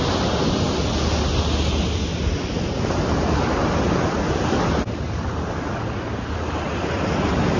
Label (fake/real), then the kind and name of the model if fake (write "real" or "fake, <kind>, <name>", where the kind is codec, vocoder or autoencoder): real